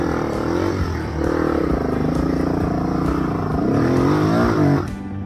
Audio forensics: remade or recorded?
recorded